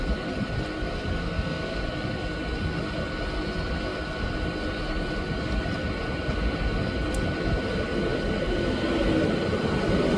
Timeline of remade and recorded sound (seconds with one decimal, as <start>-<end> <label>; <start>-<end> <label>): 0.0-1.2 recorded; 1.2-1.8 remade; 1.8-10.2 recorded